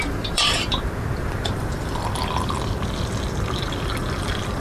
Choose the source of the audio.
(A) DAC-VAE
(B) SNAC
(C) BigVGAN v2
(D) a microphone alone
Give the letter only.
C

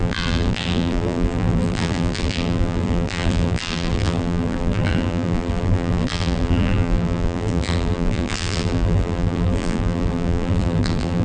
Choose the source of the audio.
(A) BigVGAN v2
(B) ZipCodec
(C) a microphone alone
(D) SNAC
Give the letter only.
A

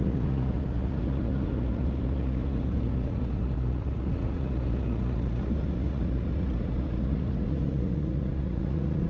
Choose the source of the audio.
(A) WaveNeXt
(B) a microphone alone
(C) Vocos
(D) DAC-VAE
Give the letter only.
C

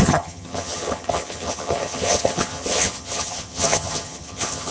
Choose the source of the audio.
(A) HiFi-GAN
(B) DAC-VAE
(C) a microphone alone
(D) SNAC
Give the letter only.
A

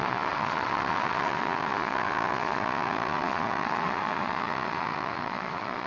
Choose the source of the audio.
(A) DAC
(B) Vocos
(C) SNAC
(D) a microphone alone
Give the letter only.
B